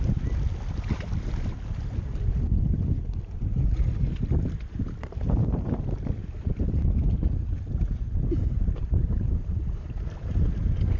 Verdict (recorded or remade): recorded